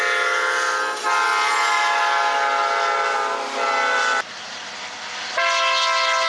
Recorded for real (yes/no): yes